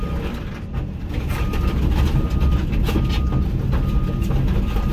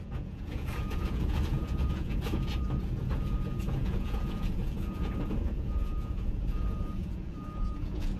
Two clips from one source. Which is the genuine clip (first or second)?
first